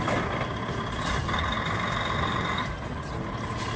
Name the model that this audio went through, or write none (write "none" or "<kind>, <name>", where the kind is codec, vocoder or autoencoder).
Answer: none